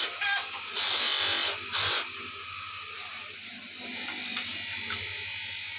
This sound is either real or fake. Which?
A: real